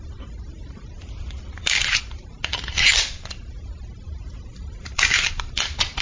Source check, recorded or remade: remade